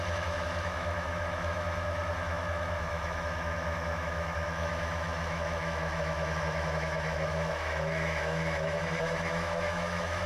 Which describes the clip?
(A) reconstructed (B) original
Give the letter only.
A